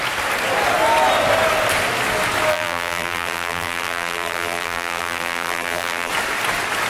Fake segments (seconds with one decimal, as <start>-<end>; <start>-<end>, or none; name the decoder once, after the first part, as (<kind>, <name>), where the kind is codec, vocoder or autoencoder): 2.5-6.1 (vocoder, BigVGAN v2)